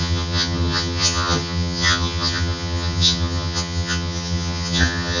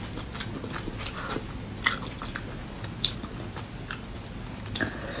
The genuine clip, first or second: second